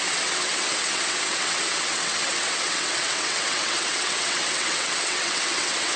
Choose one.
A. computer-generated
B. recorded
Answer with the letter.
A